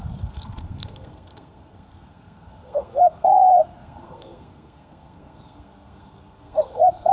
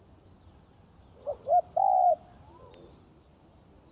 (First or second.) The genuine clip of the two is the second